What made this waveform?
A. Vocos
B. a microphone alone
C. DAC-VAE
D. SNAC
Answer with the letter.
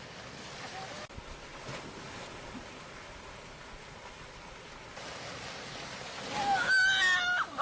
B